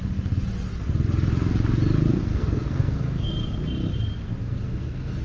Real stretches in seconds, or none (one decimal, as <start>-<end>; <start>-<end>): 0.0-2.1; 3.3-4.2